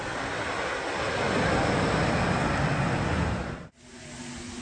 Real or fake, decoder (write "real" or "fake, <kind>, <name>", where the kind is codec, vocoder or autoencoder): real